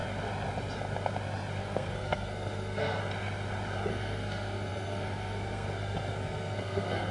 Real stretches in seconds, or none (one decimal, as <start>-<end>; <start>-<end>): 0.0-1.6; 3.0-3.9